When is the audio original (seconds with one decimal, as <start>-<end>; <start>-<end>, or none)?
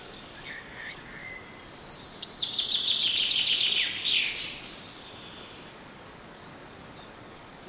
1.2-5.7